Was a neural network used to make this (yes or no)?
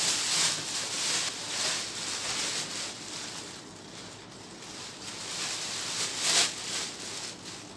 no